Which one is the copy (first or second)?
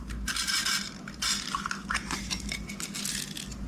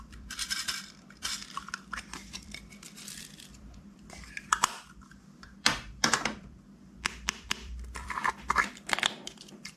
second